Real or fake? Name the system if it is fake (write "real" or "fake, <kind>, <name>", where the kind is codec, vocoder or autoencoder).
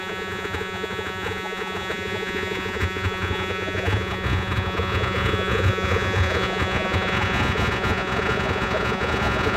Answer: fake, vocoder, Vocos